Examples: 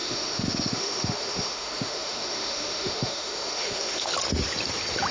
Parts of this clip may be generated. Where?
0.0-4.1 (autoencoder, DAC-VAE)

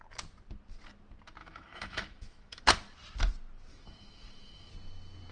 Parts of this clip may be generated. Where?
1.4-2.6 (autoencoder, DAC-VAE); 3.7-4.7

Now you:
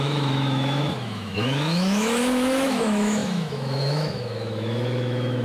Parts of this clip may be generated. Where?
0.0-5.4 (autoencoder, DAC-VAE)